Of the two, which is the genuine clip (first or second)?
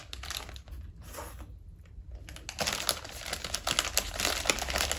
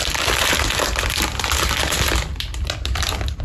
first